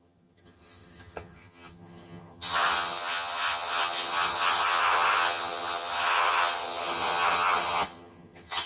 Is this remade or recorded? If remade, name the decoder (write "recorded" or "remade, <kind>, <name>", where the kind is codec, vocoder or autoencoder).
remade, vocoder, HiFi-GAN